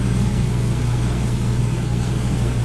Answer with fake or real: fake